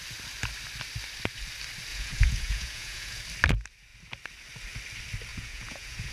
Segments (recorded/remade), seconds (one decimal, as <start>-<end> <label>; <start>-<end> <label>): 0.0-1.9 recorded; 1.9-3.2 remade; 3.2-5.3 recorded; 5.3-6.1 remade